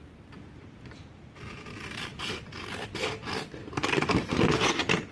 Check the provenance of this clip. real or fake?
real